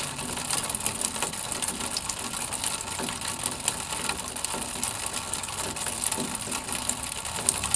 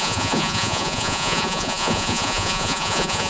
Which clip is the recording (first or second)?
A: first